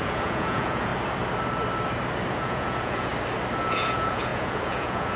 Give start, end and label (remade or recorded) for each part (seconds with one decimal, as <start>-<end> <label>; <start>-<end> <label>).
0.0-0.9 remade; 0.9-2.3 recorded; 2.3-3.1 remade; 3.1-3.6 recorded; 3.6-5.2 remade